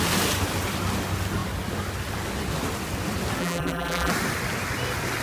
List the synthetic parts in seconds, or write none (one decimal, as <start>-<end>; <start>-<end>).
3.4-4.1